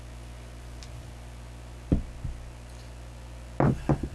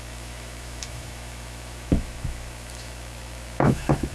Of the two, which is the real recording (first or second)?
first